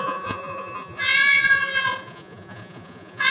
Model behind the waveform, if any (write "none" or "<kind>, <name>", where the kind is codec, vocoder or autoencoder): vocoder, Vocos